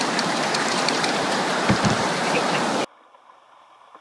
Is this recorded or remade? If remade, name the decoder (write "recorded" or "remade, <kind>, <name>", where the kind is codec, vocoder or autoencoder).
remade, vocoder, BigVGAN v2